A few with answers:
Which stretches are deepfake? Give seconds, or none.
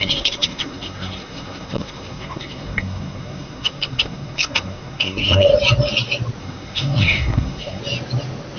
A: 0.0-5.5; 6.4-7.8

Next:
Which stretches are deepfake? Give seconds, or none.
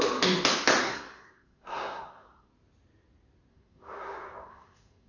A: 0.8-2.5; 3.5-5.1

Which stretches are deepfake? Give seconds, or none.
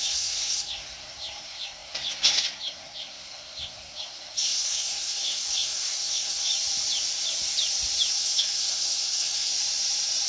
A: 0.0-6.5; 8.1-9.5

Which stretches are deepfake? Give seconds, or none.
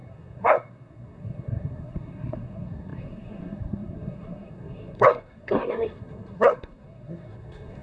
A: 0.0-7.8